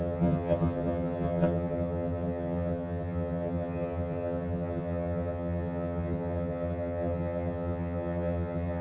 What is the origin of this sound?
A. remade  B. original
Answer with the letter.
A